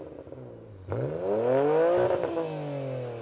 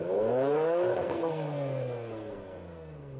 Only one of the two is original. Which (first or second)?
first